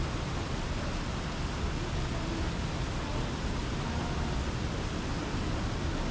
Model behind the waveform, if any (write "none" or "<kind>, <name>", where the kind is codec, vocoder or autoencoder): none